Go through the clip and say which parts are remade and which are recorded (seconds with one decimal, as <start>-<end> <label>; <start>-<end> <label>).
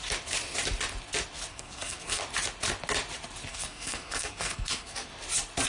0.0-1.5 recorded; 1.5-2.2 remade; 2.2-3.5 recorded; 3.5-5.1 remade; 5.1-5.7 recorded